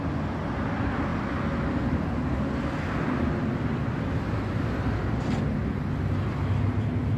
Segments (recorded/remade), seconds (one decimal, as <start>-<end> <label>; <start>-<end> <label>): 0.0-7.2 recorded